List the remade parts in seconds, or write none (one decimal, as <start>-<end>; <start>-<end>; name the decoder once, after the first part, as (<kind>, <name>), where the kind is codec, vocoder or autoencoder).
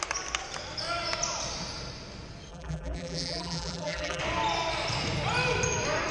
2.5-4.2 (vocoder, BigVGAN v2)